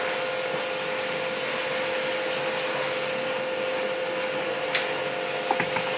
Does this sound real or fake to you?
real